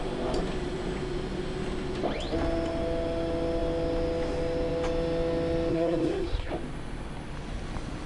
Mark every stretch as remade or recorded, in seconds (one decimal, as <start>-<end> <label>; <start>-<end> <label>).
0.0-5.7 recorded; 5.7-6.5 remade; 6.5-8.1 recorded